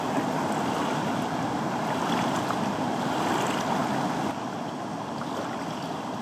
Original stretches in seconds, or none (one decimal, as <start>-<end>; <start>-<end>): 0.0-6.2